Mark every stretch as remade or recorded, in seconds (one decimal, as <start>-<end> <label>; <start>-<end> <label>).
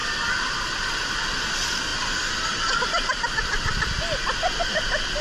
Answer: 0.0-5.2 recorded